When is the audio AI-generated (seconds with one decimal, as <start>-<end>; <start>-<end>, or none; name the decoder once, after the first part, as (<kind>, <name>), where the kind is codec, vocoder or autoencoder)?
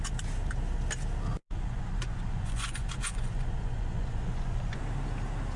1.4-4.8 (vocoder, Vocos)